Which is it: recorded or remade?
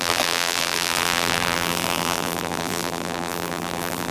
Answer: remade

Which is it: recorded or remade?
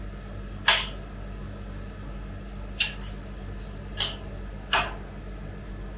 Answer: recorded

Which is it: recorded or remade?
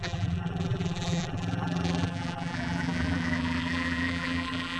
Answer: remade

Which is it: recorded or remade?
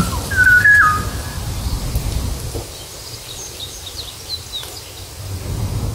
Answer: recorded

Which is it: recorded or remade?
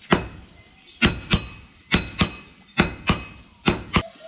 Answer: recorded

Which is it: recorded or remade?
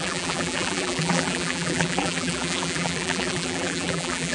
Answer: remade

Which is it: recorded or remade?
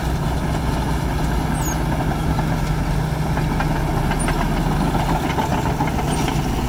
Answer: recorded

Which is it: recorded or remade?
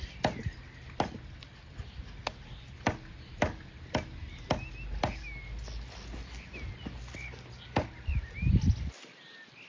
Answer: recorded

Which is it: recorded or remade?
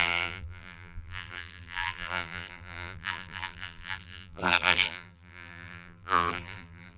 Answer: remade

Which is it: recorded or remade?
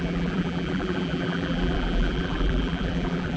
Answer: remade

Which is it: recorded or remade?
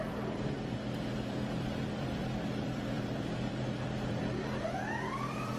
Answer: remade